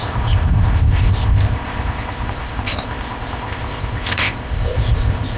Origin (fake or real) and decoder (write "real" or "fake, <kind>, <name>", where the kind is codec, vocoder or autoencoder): fake, codec, ZipCodec